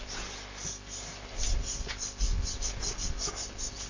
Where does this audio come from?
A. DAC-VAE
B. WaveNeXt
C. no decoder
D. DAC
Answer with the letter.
C